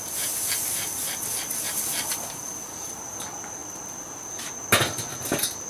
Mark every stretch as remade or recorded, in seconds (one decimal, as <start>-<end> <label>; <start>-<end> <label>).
0.0-5.7 recorded